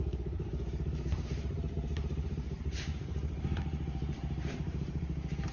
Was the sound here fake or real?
fake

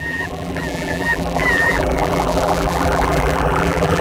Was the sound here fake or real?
fake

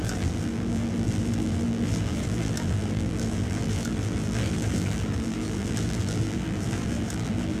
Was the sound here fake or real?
fake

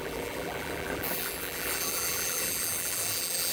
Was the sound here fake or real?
fake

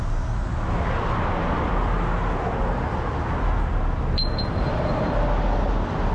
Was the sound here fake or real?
real